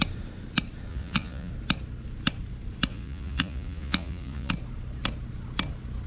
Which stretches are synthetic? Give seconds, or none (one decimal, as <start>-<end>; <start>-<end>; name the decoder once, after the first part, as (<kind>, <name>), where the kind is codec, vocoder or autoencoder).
0.9-1.5 (vocoder, Vocos); 2.9-4.5